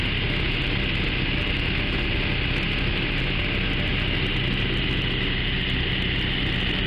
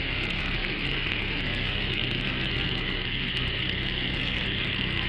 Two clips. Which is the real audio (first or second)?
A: first